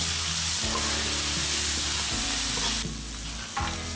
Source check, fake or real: real